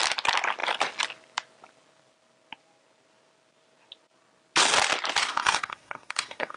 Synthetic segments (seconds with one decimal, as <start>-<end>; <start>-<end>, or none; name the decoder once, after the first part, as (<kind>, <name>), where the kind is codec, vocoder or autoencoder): 5.2-6.6 (codec, SNAC)